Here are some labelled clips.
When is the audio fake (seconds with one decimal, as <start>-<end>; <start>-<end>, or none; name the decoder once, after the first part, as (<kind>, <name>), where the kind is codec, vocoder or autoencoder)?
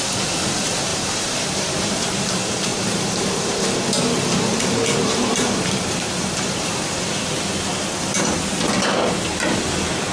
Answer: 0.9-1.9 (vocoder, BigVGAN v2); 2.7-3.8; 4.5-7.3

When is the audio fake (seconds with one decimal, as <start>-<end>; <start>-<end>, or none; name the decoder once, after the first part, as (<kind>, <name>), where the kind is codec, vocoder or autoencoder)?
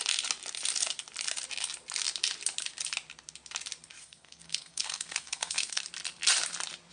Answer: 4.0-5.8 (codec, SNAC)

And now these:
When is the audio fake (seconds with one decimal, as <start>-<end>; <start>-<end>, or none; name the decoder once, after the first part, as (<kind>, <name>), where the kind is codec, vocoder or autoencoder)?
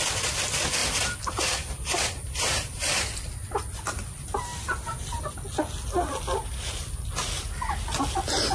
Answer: 0.8-3.2 (vocoder, BigVGAN v2); 4.5-5.2